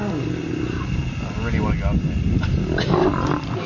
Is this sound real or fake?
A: real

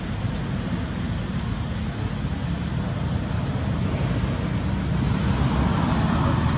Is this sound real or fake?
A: real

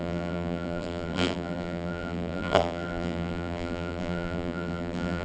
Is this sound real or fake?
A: fake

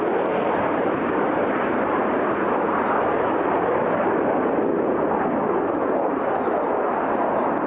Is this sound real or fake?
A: real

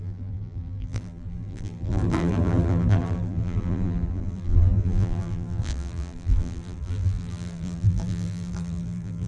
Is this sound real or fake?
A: fake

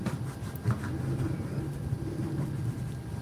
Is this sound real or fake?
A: real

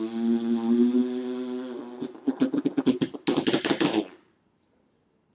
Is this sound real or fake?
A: real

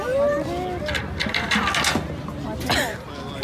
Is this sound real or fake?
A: real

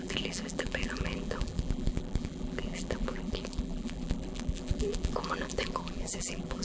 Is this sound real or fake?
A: fake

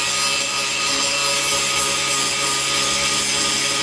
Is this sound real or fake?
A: real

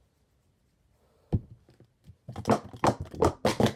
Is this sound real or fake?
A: real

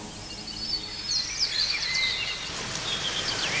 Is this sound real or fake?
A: real